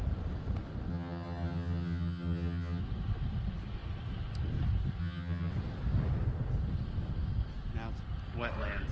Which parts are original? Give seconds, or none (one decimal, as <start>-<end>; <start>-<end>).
0.0-0.9; 2.8-5.0; 5.5-8.9